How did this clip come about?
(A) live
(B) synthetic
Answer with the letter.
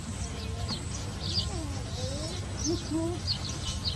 A